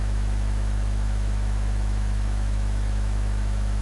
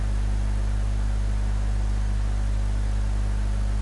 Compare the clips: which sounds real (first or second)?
second